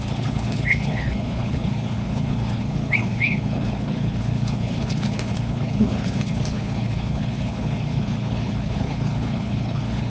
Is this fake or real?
fake